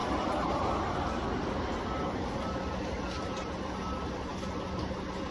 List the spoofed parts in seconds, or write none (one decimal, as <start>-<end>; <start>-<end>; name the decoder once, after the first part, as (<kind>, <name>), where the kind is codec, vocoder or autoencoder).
none